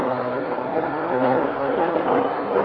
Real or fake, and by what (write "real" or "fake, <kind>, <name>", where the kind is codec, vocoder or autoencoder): fake, codec, SNAC